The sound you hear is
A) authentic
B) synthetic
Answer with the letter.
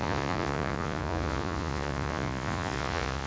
B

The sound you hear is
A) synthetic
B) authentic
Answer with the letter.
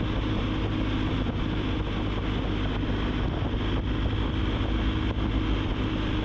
B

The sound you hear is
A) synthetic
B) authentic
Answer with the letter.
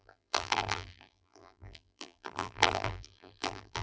A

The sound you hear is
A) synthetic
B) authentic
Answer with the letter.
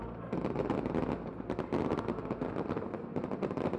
B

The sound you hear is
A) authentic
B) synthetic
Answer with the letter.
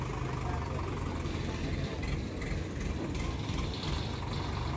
A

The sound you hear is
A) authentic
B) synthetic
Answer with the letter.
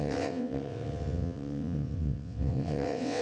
B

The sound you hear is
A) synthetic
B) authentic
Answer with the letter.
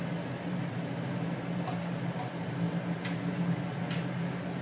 B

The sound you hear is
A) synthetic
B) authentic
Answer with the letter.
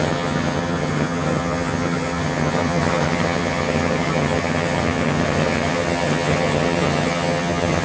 A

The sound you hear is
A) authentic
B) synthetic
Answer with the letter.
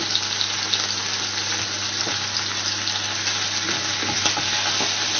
A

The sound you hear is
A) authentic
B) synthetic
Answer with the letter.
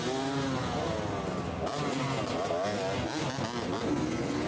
A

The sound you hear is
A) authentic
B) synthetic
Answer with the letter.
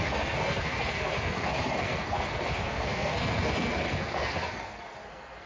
B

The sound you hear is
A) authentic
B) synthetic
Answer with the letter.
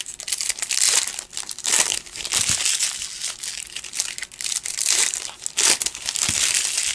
A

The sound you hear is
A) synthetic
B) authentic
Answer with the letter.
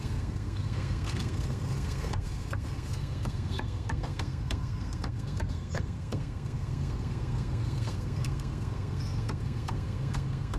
A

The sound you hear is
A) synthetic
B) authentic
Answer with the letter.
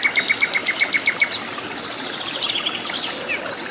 B